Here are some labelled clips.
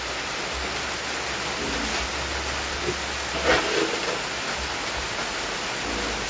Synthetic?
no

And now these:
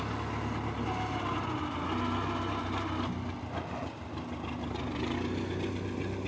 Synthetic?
no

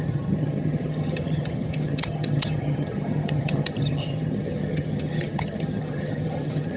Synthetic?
yes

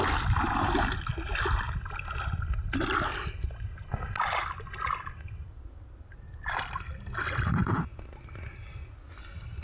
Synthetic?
no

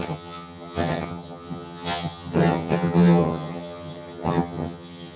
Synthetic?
yes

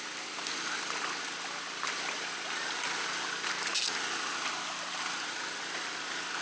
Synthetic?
no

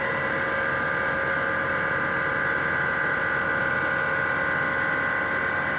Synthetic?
no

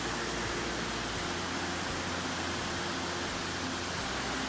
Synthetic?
no